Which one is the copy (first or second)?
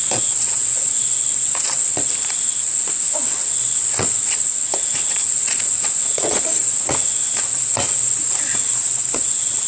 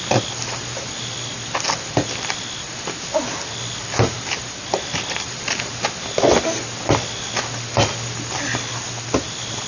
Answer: first